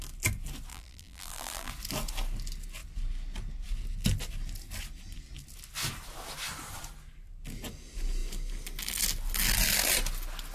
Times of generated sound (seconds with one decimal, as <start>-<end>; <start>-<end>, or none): 0.7-1.7